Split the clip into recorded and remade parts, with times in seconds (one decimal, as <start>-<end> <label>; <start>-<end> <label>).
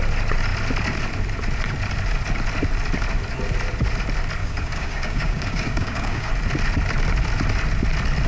0.0-4.4 recorded; 4.4-6.3 remade; 6.3-8.3 recorded